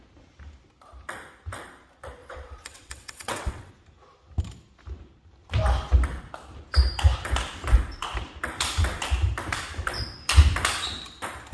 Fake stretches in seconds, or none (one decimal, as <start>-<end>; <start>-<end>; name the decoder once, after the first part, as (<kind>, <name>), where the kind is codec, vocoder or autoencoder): 2.2-3.7 (vocoder, WaveNeXt)